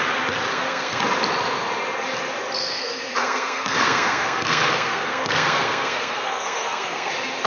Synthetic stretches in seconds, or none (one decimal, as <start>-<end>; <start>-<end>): 0.5-1.0; 2.6-7.1